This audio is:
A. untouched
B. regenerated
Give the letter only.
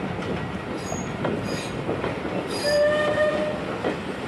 A